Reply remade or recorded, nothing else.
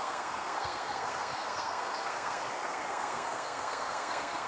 remade